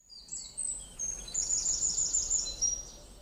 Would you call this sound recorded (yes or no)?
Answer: yes